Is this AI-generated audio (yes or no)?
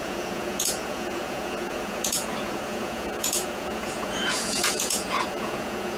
yes